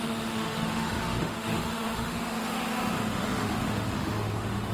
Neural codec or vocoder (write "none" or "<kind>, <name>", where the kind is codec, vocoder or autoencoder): autoencoder, DAC-VAE